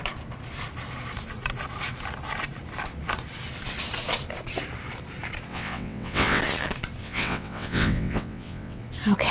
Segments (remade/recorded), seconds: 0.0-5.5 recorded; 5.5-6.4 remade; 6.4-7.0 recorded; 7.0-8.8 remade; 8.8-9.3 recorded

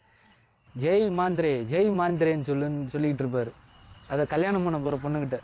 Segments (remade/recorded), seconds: 0.0-2.1 remade; 2.1-2.9 recorded; 2.9-5.4 remade

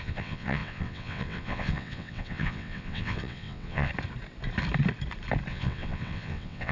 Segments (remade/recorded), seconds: 0.0-3.9 remade; 3.9-5.5 recorded; 5.5-6.7 remade

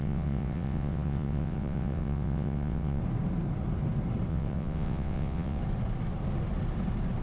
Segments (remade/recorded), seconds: 0.0-3.0 remade; 3.0-4.3 recorded; 4.3-5.6 remade; 5.6-7.2 recorded